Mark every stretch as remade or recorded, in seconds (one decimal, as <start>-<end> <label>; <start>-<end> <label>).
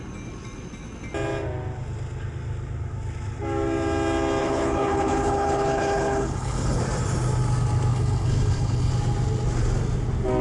0.0-4.4 recorded; 4.4-6.8 remade; 6.8-7.9 recorded; 7.9-8.9 remade; 8.9-10.4 recorded